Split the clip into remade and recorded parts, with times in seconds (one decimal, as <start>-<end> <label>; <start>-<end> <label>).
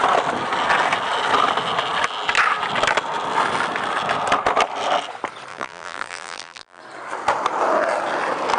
0.0-5.5 recorded; 5.5-6.8 remade; 6.8-8.6 recorded